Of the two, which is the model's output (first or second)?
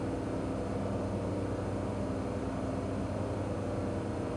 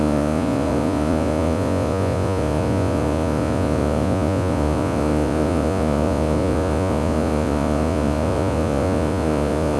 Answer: second